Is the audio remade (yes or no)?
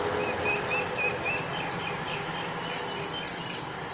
no